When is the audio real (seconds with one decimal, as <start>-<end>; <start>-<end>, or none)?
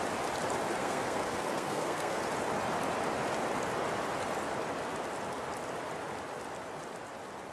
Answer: 0.0-0.8; 2.2-7.5